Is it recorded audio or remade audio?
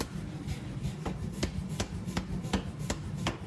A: recorded